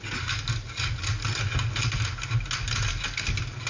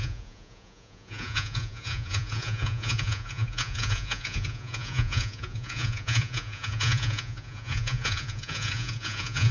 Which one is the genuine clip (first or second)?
first